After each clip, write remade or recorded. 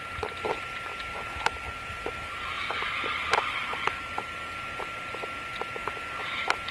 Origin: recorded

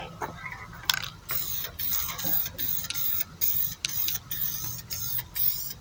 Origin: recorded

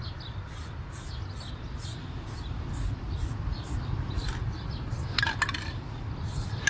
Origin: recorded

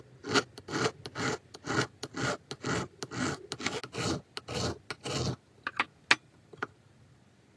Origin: recorded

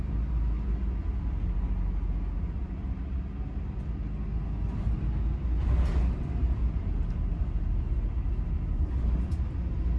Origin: recorded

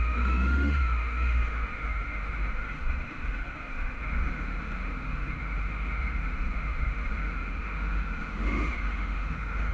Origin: remade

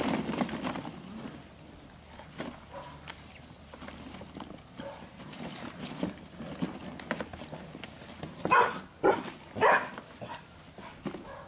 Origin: recorded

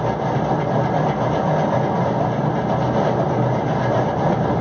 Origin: recorded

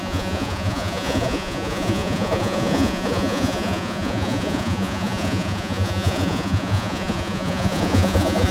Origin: remade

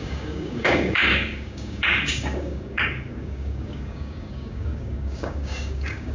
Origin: remade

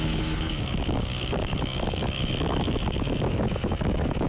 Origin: remade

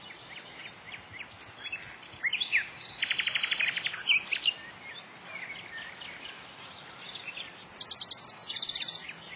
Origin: recorded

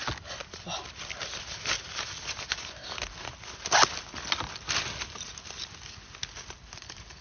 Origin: recorded